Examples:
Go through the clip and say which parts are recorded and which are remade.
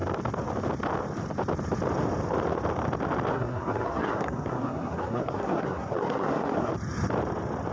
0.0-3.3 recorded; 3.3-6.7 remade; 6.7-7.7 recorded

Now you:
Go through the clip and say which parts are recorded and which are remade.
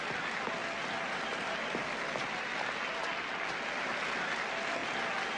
0.0-5.4 recorded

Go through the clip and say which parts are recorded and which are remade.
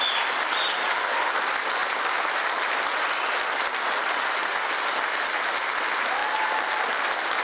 0.0-7.4 recorded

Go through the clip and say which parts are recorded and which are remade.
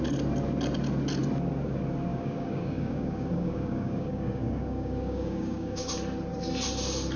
0.0-2.1 recorded; 2.1-5.9 remade; 5.9-7.2 recorded